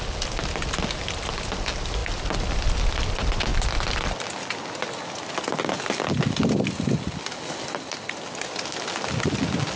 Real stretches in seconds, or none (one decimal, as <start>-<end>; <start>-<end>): 0.0-9.8